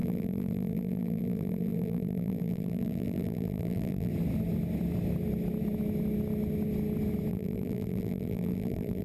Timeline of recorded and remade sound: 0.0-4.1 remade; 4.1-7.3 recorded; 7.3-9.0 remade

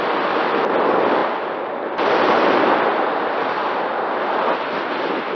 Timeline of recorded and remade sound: 0.0-5.3 recorded

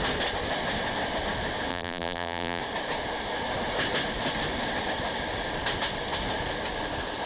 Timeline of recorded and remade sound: 0.0-1.7 recorded; 1.7-2.6 remade; 2.6-7.3 recorded

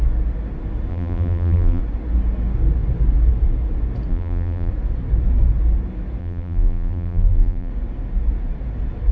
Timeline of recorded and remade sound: 0.0-0.9 recorded; 0.9-1.8 remade; 1.8-4.1 recorded; 4.1-4.7 remade; 4.7-6.2 recorded; 6.2-7.7 remade; 7.7-9.1 recorded

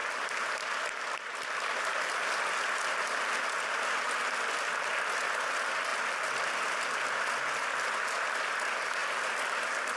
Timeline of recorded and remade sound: 0.0-2.3 remade; 2.3-5.9 recorded; 5.9-6.6 remade; 6.6-9.0 recorded; 9.0-10.0 remade